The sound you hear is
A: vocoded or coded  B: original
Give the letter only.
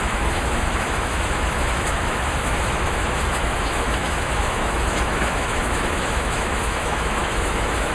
A